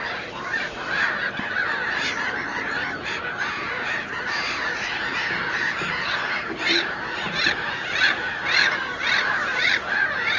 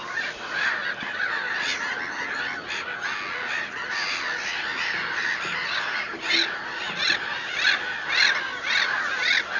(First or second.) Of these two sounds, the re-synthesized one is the first